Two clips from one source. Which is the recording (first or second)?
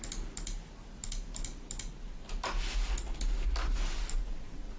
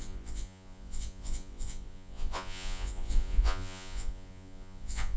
first